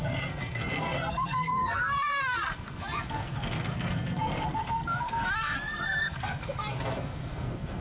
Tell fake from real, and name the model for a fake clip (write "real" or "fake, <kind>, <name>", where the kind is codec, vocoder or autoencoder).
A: fake, codec, SNAC